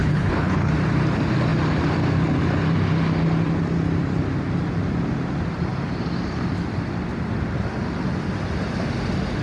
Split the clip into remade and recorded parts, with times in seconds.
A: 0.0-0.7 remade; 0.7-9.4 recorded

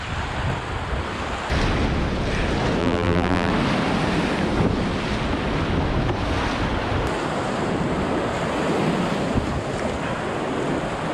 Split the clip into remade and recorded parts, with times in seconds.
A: 0.0-2.8 recorded; 2.8-3.5 remade; 3.5-11.1 recorded

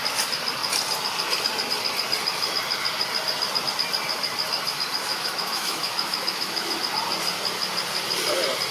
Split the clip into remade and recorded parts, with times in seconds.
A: 0.0-5.1 recorded; 5.1-6.8 remade; 6.8-8.7 recorded

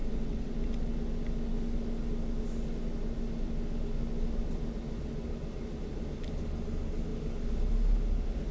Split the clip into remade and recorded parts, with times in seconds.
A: 0.0-0.5 remade; 0.5-8.5 recorded

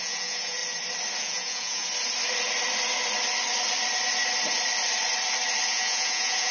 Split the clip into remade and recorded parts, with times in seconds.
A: 0.0-0.6 remade; 0.6-1.2 recorded; 1.2-1.8 remade; 1.8-5.7 recorded; 5.7-6.5 remade

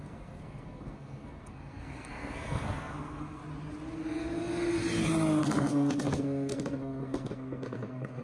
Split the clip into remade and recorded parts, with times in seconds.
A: 0.0-3.4 remade; 3.4-5.4 recorded; 5.4-8.2 remade

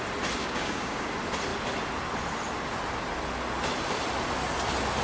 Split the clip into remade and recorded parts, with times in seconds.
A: 0.0-0.4 recorded; 0.4-1.1 remade; 1.1-5.0 recorded

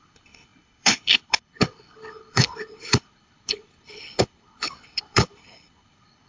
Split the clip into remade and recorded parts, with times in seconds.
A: 0.0-6.3 remade